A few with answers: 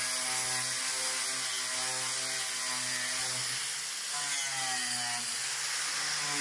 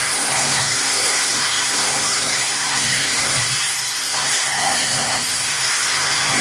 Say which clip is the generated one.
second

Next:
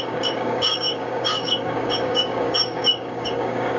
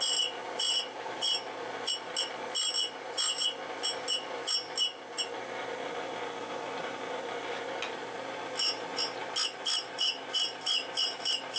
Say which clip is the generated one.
first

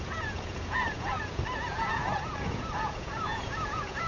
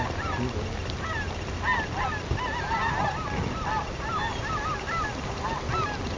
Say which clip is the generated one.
first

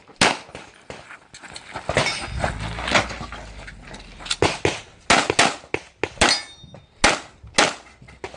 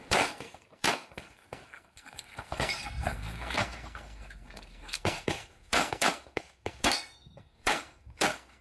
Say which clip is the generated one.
second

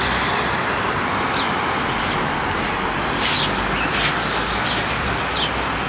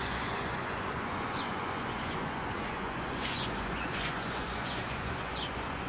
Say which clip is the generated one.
second